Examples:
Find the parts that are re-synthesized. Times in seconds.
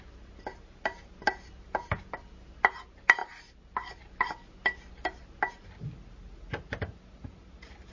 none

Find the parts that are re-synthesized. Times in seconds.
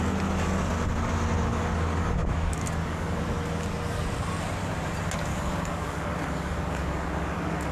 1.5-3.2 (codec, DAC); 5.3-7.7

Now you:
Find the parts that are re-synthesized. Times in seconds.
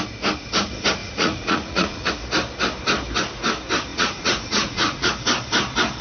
1.0-2.1 (vocoder, Vocos); 3.9-5.1